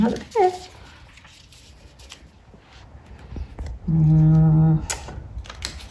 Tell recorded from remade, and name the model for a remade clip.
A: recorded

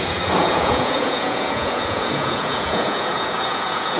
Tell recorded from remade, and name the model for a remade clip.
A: remade, vocoder, Vocos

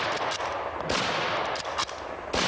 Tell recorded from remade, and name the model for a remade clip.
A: recorded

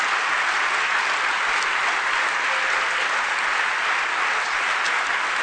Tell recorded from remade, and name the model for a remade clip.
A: recorded